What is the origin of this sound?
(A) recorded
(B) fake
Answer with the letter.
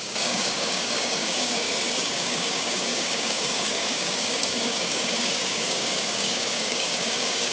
B